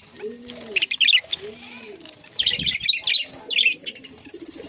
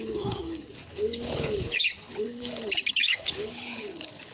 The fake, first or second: second